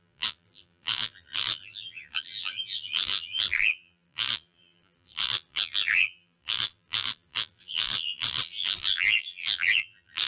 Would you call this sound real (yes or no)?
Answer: no